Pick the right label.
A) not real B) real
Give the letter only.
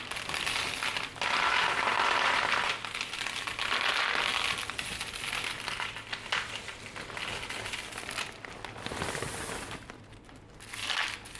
B